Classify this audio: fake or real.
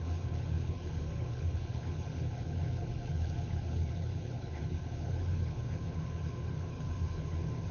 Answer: fake